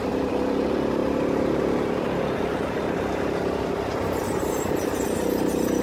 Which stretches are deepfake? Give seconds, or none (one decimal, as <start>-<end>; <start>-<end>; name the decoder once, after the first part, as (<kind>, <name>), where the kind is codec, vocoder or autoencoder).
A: 1.0-4.5 (vocoder, BigVGAN v2)